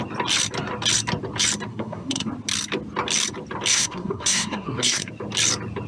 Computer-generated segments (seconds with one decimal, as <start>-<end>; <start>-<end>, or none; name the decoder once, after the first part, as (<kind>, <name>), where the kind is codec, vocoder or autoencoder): 1.7-2.3 (codec, SNAC); 3.7-5.1